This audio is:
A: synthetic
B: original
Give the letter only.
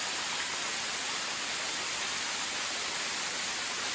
B